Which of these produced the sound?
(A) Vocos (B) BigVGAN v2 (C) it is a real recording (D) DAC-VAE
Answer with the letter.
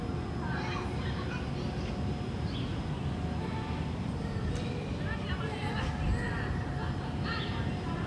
C